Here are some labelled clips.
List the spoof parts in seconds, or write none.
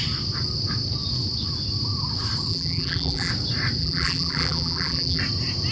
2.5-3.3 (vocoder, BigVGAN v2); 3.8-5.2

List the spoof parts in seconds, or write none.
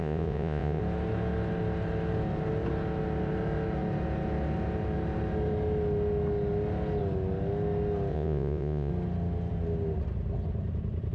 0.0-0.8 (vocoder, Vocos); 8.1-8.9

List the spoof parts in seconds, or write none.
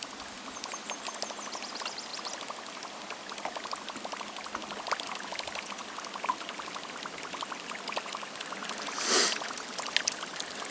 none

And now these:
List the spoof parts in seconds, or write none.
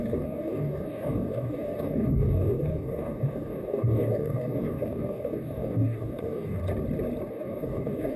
0.0-6.6 (codec, DAC); 7.3-8.2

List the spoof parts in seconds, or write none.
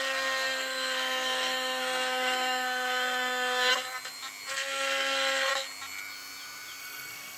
0.0-3.7 (codec, SNAC); 4.5-5.5; 6.8-7.4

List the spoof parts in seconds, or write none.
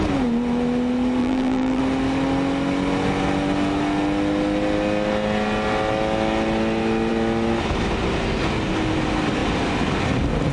1.2-1.8 (vocoder, BigVGAN v2)